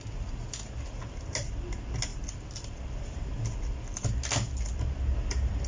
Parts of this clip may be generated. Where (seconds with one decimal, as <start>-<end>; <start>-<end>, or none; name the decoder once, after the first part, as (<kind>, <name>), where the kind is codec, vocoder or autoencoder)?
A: none